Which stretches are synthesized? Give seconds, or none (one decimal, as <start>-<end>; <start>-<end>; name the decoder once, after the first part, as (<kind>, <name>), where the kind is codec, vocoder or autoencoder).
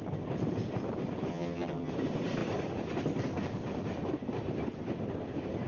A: 1.3-1.9 (vocoder, HiFi-GAN)